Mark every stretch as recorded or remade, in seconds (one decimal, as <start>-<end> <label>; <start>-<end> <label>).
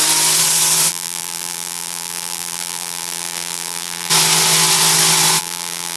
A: 0.0-0.9 recorded; 0.9-4.1 remade; 4.1-5.4 recorded; 5.4-6.0 remade